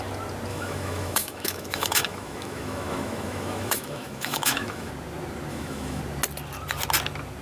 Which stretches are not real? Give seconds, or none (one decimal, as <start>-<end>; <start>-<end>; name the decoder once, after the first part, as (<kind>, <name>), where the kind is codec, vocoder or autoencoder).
0.5-4.9 (autoencoder, DAC-VAE); 5.5-6.0